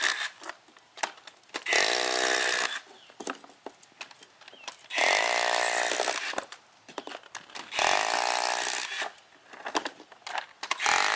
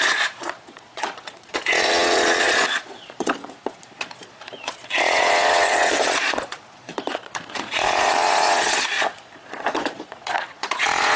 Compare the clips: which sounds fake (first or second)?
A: second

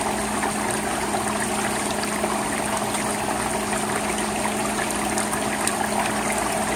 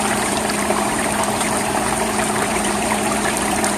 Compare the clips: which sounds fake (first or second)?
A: second